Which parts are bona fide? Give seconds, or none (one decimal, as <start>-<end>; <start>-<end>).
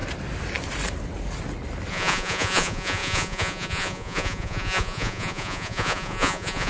0.0-1.9